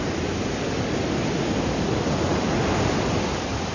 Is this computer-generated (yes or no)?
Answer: no